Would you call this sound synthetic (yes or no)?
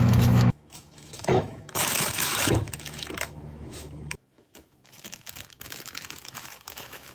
yes